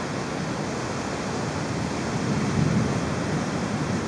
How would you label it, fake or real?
real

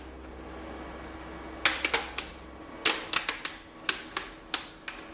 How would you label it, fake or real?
real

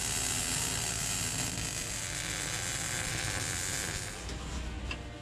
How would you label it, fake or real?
real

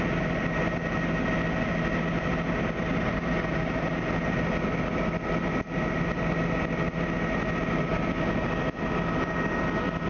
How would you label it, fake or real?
real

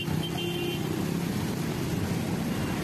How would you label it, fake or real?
real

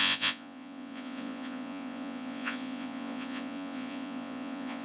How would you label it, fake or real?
fake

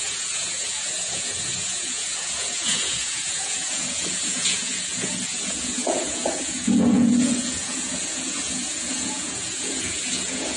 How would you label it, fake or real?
fake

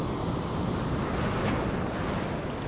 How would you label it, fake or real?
real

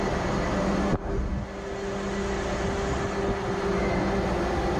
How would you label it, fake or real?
real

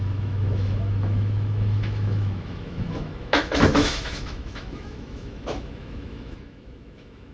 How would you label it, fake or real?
fake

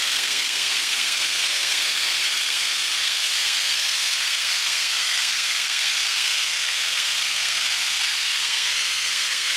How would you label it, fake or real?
fake